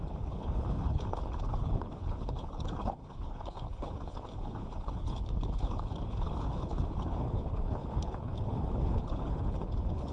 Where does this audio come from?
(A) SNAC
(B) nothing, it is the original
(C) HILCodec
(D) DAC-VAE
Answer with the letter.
C